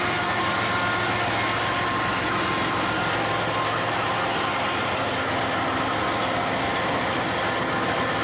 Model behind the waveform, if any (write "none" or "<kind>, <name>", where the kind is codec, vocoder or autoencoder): none